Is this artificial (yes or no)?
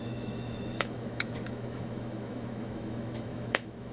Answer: yes